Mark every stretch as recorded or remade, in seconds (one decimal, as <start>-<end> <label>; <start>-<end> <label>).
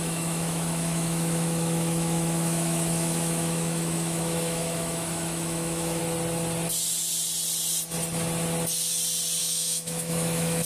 0.0-6.0 remade; 6.0-9.4 recorded; 9.4-10.6 remade